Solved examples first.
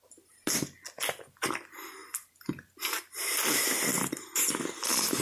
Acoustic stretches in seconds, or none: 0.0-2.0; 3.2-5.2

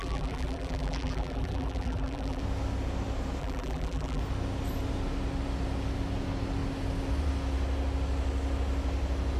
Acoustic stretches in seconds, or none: 2.4-3.4; 4.2-9.4

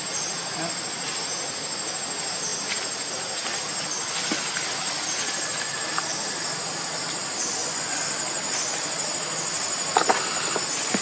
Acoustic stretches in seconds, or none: 0.0-7.6; 8.1-11.0

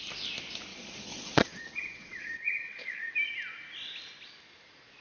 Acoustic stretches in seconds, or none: 0.0-0.7; 3.1-5.0

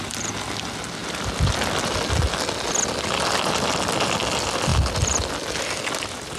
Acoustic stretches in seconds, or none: 0.0-6.4

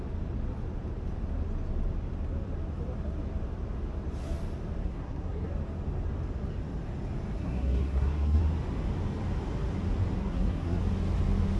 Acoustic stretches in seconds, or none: 0.0-4.8; 5.5-7.3; 8.4-10.2; 10.8-11.6

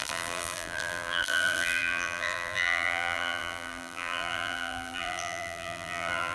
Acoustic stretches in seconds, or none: none

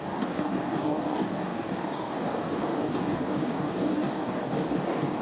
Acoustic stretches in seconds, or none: none